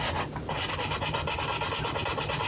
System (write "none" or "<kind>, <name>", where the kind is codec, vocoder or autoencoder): none